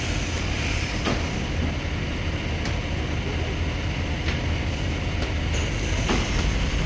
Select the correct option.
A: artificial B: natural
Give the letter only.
B